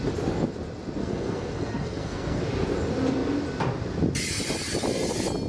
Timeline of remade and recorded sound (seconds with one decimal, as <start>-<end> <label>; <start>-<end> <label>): 0.0-1.0 recorded; 1.0-2.4 remade; 2.4-5.5 recorded